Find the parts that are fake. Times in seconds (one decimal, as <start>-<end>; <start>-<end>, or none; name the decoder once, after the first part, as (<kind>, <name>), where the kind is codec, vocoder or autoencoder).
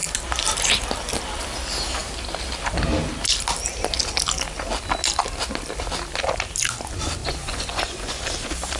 7.2-8.2 (vocoder, Vocos)